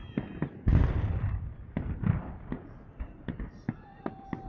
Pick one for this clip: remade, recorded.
remade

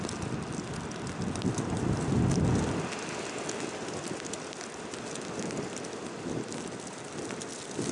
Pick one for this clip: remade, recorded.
recorded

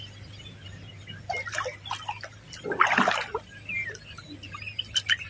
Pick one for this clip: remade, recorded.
remade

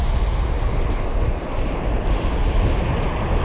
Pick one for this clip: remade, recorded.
recorded